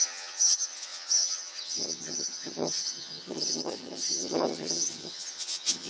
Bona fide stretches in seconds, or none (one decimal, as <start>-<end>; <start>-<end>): none